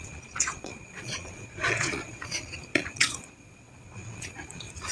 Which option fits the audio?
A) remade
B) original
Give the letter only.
A